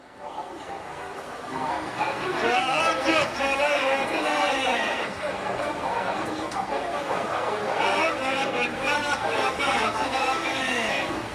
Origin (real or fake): fake